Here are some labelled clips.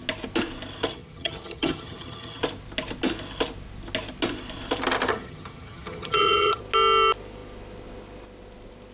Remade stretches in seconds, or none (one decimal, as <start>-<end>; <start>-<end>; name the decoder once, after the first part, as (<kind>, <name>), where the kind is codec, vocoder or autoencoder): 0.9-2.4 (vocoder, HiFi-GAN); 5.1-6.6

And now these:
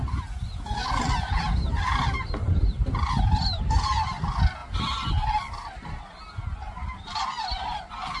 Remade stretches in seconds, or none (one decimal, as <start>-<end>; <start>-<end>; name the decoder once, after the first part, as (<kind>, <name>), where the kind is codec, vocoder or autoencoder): none

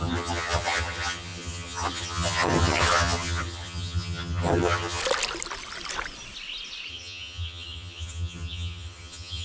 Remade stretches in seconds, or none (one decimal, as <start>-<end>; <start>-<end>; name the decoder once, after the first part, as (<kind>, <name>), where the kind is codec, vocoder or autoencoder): 0.0-5.0 (vocoder, HiFi-GAN); 6.9-9.4